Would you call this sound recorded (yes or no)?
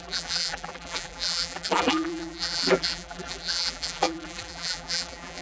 no